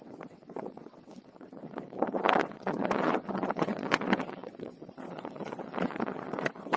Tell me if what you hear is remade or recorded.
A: remade